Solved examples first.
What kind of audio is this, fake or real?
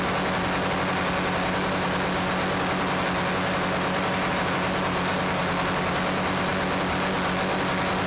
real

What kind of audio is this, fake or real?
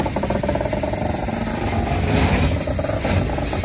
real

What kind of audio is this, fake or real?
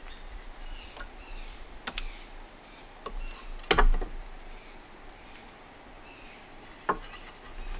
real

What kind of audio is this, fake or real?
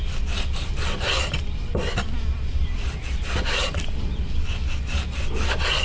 real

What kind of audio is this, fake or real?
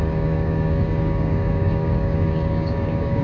fake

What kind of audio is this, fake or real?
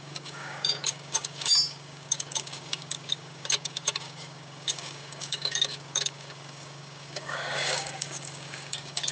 fake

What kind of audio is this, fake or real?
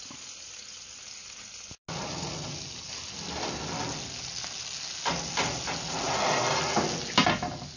real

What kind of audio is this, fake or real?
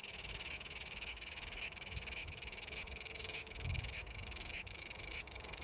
fake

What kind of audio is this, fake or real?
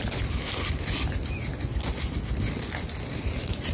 real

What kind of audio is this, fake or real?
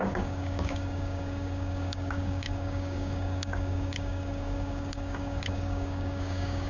fake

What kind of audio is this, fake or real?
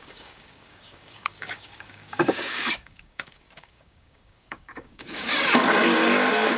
fake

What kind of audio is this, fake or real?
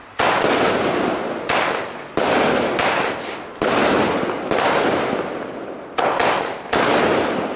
real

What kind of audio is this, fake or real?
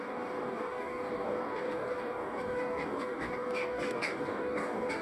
fake